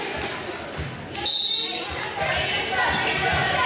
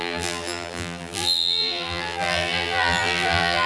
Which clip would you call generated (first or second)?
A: second